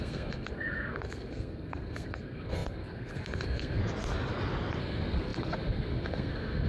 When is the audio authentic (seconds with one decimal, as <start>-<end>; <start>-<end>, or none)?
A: 3.8-4.8